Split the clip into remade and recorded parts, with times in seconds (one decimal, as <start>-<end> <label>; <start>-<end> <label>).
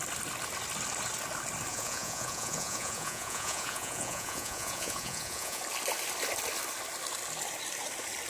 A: 0.0-1.7 recorded; 1.7-5.6 remade; 5.6-8.3 recorded